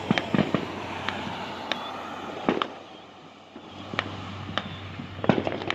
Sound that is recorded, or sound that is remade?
recorded